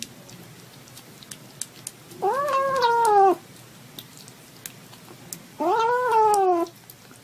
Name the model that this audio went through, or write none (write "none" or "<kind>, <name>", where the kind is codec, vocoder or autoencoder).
none